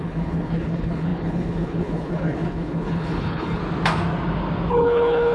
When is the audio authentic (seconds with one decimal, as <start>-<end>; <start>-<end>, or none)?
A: 3.6-4.7